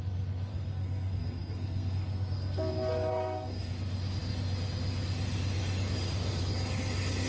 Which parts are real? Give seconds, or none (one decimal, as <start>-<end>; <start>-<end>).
0.0-0.5; 2.7-3.1; 3.7-7.3